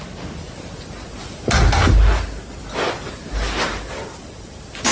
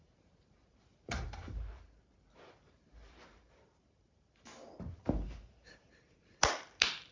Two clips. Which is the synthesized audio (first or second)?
second